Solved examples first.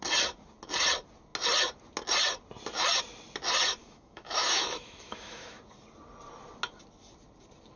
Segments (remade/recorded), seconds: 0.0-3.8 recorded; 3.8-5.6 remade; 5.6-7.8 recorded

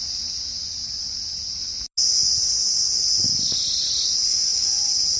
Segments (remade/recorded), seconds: 0.0-0.6 recorded; 0.6-1.5 remade; 1.5-5.2 recorded

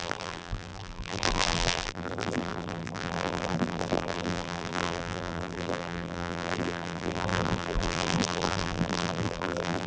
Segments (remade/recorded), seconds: 0.0-9.9 remade

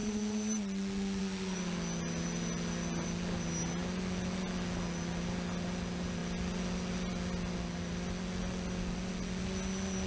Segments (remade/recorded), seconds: 0.0-10.1 recorded

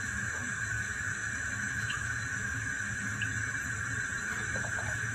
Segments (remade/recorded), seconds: 0.0-3.3 remade; 3.3-4.4 recorded; 4.4-5.1 remade

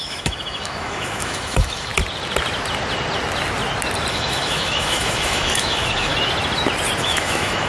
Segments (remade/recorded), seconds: 0.0-1.9 remade; 1.9-4.1 recorded; 4.1-6.1 remade; 6.1-7.0 recorded; 7.0-7.7 remade

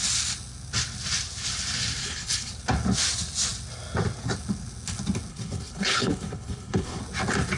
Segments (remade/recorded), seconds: 0.0-2.0 recorded; 2.0-2.5 remade; 2.5-5.3 recorded; 5.3-7.0 remade; 7.0-7.6 recorded

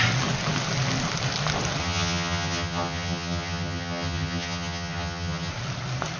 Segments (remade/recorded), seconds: 0.0-1.8 recorded; 1.8-5.5 remade; 5.5-6.2 recorded